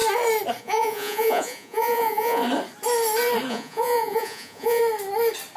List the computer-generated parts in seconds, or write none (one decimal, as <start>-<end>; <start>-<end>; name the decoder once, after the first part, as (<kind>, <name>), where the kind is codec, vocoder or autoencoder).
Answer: 0.6-2.4 (vocoder, Vocos); 3.5-4.8